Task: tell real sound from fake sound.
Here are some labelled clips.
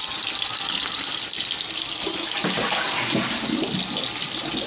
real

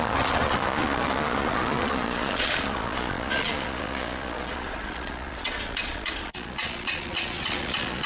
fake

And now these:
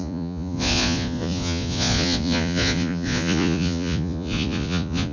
fake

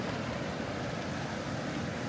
real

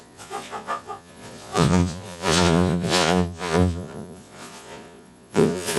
fake